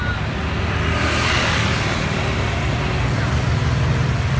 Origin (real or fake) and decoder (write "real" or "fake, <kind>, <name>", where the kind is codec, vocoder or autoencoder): real